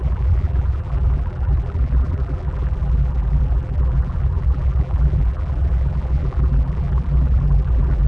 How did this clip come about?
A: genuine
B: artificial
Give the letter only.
B